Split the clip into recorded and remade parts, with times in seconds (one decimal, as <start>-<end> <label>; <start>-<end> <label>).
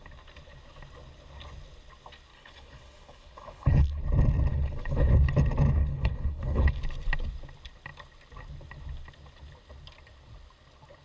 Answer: 0.0-2.3 recorded; 2.3-4.0 remade; 4.0-4.5 recorded; 4.5-5.1 remade; 5.1-5.8 recorded; 5.8-6.8 remade; 6.8-11.0 recorded